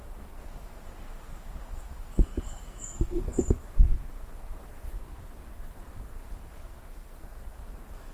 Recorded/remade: remade